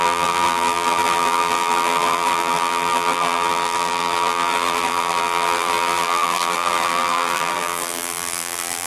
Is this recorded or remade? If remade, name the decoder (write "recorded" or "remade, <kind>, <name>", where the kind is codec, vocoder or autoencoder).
remade, vocoder, BigVGAN v2